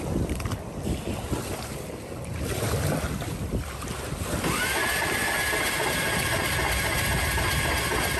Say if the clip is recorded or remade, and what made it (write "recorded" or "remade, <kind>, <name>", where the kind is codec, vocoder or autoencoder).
recorded